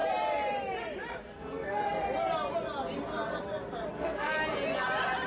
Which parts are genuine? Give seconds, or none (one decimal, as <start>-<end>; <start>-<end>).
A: 0.0-1.2; 1.8-3.9; 4.3-5.3